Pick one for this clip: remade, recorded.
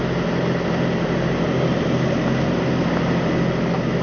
recorded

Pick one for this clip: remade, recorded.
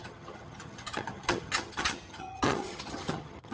remade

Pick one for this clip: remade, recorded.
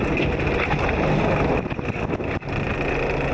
recorded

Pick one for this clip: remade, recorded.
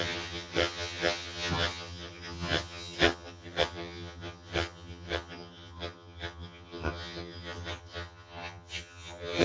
remade